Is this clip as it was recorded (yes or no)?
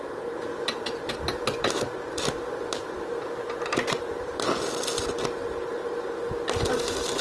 yes